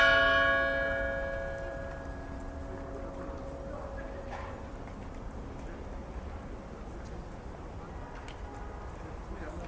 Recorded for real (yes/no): yes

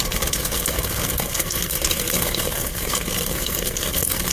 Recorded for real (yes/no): no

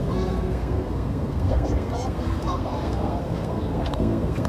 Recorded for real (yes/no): no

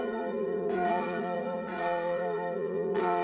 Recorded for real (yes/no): no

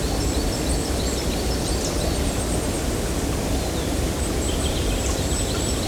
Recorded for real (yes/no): yes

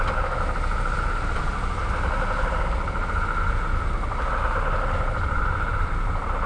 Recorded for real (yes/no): yes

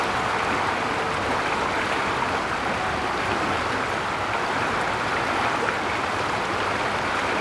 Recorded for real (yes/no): no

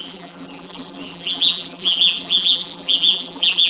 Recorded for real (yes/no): no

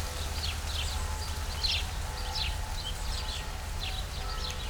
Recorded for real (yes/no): yes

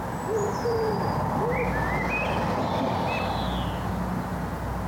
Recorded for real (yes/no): yes